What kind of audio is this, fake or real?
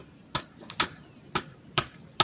real